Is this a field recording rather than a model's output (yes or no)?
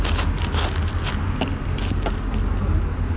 yes